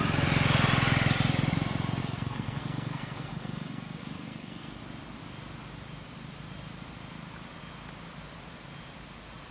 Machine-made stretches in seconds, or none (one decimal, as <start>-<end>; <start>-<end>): 2.0-4.8